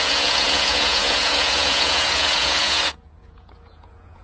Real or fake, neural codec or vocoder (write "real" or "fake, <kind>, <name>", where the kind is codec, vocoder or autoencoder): fake, vocoder, Vocos